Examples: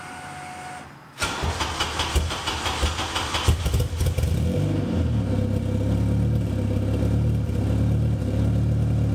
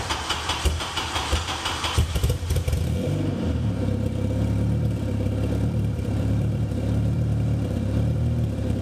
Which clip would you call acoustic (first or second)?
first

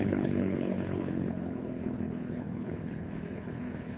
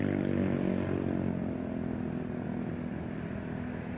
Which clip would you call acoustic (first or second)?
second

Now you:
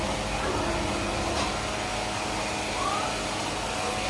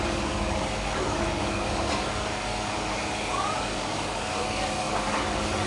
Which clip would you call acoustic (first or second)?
first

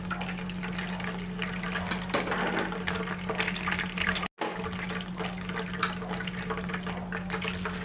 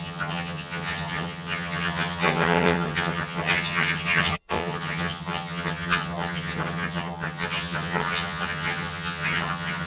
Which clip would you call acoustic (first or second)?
first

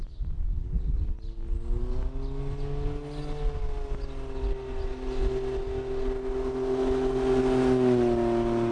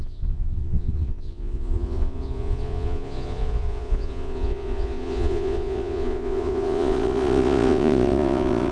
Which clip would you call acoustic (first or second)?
first